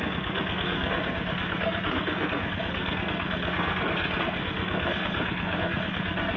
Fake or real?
fake